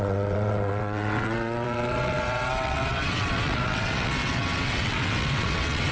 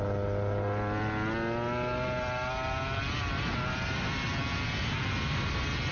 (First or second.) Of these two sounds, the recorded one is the second